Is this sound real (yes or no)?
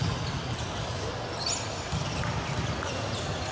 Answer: yes